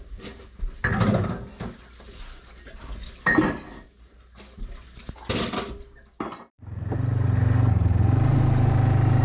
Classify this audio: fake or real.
real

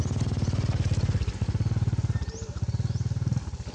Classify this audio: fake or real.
real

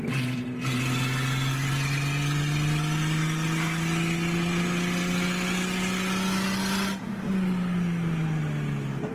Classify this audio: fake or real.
real